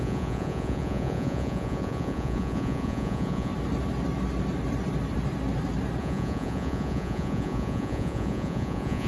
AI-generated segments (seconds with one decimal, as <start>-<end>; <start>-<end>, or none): 0.0-3.5; 6.0-9.1